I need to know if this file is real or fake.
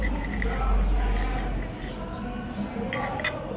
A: real